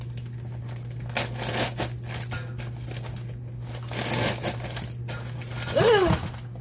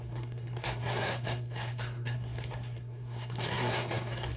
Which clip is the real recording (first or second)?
first